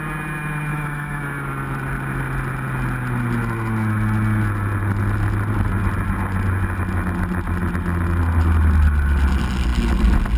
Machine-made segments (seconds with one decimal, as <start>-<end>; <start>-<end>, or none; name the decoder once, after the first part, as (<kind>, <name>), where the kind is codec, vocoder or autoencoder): 0.7-1.2 (autoencoder, DAC-VAE)